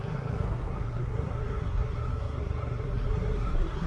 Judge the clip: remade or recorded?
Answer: remade